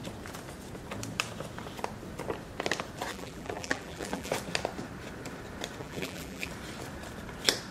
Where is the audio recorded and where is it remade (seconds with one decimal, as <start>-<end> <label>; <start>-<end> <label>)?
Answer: 0.0-3.1 recorded; 3.1-4.3 remade; 4.3-5.8 recorded; 5.8-6.5 remade; 6.5-7.7 recorded